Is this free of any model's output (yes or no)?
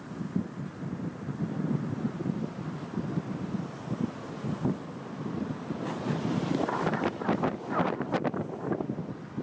yes